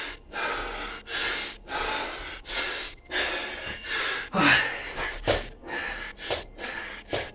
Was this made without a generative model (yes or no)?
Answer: yes